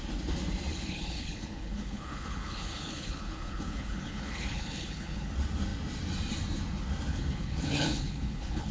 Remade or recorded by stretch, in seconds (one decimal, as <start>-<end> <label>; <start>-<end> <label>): 0.0-0.7 recorded; 0.7-5.3 remade; 5.3-7.1 recorded; 7.1-8.7 remade

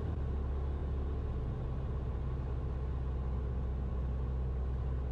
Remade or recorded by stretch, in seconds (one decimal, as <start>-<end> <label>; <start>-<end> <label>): 0.0-5.1 recorded

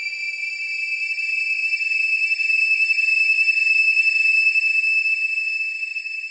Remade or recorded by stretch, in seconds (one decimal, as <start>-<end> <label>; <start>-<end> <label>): 0.0-6.3 recorded

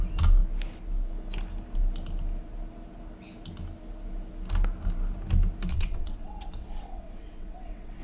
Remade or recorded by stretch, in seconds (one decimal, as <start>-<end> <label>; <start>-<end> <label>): 0.0-5.7 recorded; 5.7-8.0 remade

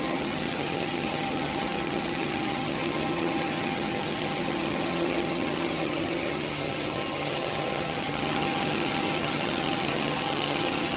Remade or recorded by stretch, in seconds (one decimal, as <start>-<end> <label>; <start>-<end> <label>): 0.0-11.0 remade